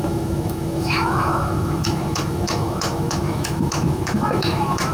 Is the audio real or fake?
fake